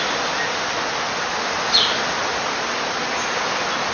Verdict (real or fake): real